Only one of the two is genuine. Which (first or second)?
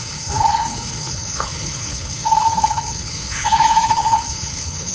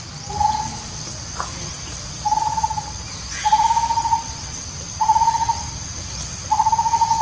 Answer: second